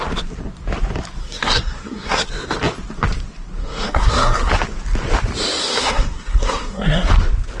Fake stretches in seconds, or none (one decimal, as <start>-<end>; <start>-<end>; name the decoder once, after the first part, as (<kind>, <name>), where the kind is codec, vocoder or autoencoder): 1.2-2.3 (codec, SNAC); 3.6-4.5; 5.6-7.1